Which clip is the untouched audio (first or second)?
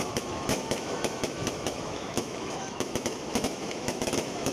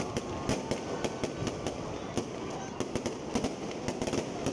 second